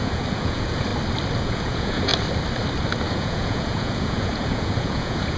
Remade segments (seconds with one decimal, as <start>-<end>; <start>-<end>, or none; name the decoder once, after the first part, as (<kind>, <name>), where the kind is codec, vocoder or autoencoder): 0.0-0.9 (vocoder, Vocos); 1.4-2.1; 3.1-5.4